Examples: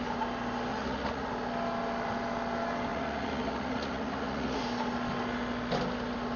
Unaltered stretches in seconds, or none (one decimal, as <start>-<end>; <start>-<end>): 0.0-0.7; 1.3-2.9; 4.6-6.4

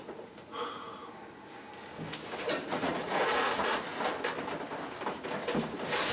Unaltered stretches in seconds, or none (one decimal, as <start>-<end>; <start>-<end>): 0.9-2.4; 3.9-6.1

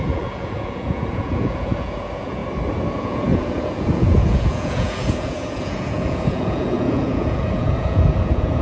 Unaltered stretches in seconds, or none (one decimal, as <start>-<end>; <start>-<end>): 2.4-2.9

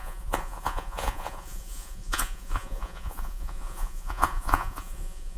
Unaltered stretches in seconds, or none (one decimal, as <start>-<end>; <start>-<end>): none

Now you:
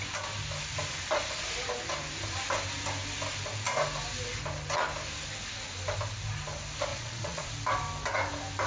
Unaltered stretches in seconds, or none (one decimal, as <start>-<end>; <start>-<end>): 0.0-6.9; 7.5-8.7

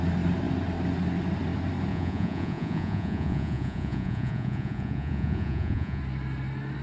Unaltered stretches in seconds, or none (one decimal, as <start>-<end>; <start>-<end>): 0.0-1.9; 6.0-6.8

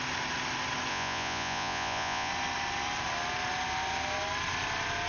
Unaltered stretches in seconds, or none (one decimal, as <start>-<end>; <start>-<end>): 0.0-0.9; 2.3-5.1

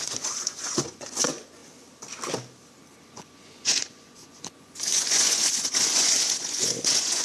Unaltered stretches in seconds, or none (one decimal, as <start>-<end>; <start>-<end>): 1.6-3.1